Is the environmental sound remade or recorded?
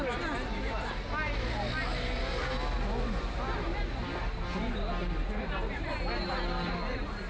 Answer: recorded